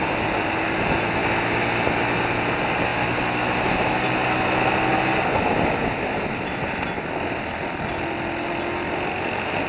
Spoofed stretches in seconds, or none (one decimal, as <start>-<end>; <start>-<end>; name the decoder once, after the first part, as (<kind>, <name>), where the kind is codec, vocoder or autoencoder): none